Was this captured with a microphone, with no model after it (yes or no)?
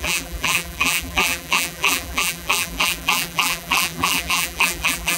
no